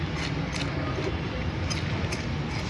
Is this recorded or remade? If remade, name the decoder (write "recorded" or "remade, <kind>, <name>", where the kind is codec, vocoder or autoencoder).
recorded